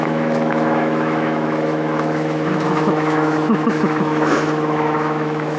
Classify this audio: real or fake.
fake